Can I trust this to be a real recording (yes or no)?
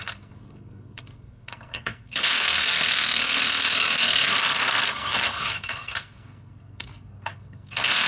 no